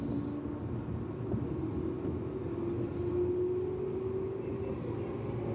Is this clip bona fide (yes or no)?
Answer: yes